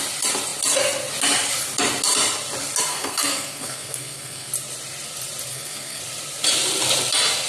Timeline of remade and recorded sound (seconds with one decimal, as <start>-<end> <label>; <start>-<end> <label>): 0.0-2.9 recorded; 2.9-4.5 remade; 4.5-5.5 recorded; 5.5-6.0 remade; 6.0-7.5 recorded